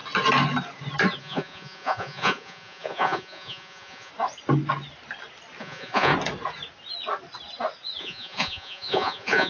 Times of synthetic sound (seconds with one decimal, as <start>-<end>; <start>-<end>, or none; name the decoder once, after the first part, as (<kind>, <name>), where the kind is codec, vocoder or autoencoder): 1.2-4.1 (vocoder, Vocos); 5.6-6.1; 8.0-9.5

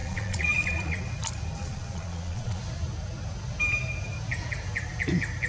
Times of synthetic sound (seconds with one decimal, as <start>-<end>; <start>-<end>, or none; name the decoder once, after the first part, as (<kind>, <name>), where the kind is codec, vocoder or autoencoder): 0.0-1.0 (vocoder, Vocos); 1.6-2.6

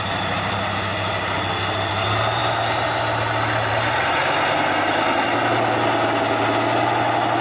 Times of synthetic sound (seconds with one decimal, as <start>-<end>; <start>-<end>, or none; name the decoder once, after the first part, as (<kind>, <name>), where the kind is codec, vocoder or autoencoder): none